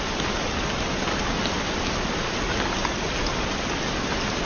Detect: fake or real real